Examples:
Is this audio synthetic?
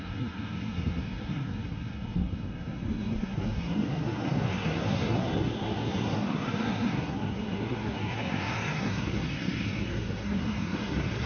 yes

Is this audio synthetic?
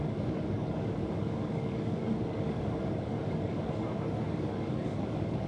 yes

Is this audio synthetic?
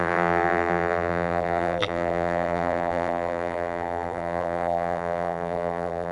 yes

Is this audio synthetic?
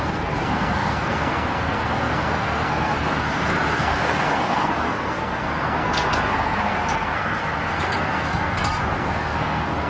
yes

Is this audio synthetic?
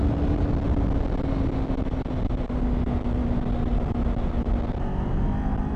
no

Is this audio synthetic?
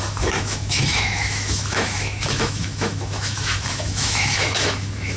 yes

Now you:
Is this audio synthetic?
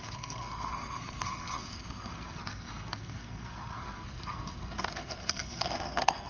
yes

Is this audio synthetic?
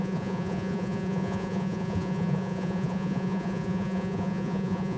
yes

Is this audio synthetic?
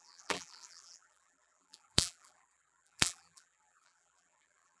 yes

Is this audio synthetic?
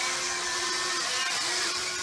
no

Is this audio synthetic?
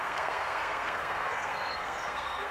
yes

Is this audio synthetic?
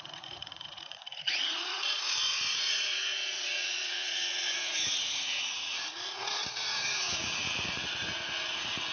yes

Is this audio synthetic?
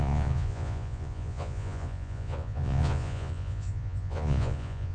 yes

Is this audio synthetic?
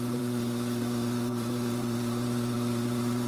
yes